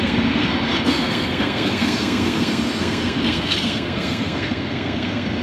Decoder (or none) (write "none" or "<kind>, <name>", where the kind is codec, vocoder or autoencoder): codec, SNAC